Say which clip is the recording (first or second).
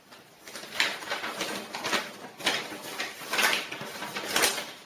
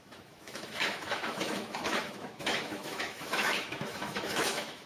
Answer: first